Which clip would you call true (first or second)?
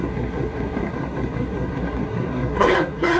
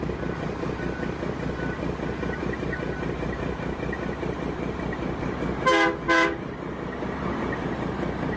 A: second